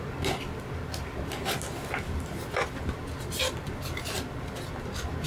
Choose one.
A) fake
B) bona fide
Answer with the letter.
B